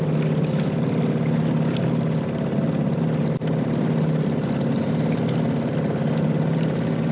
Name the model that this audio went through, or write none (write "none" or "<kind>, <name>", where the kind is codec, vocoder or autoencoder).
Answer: none